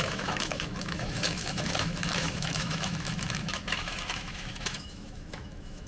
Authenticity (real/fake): fake